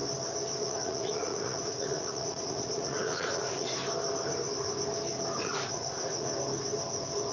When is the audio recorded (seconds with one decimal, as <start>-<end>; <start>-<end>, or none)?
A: 0.0-0.6; 3.8-5.4; 6.3-7.3